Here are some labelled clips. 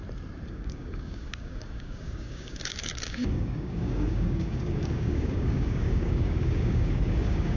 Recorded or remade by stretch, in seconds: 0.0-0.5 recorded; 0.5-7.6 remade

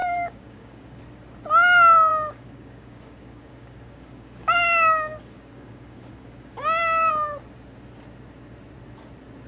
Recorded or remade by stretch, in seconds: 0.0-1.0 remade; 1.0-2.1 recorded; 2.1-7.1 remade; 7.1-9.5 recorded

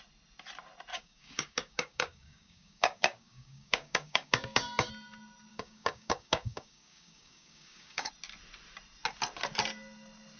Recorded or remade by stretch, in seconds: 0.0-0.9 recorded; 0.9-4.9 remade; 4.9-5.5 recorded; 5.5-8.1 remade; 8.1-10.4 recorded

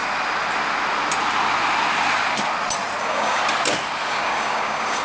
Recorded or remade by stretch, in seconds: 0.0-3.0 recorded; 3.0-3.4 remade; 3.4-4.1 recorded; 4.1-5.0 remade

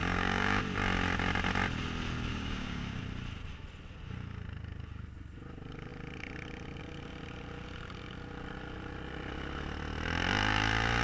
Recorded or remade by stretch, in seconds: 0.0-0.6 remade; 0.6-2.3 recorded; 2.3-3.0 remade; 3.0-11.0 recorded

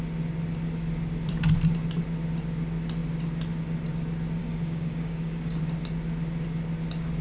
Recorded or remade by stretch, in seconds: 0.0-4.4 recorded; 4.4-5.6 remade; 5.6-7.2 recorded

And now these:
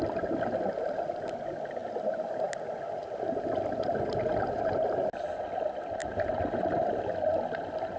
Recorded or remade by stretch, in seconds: 0.0-8.0 recorded

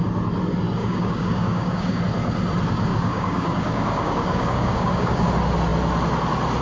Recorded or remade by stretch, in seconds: 0.0-0.8 recorded; 0.8-2.0 remade; 2.0-2.9 recorded; 2.9-5.3 remade; 5.3-6.6 recorded